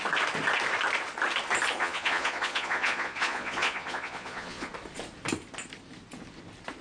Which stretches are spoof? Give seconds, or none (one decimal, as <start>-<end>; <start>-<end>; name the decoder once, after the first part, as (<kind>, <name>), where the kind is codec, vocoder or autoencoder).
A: 1.8-4.7 (vocoder, Vocos)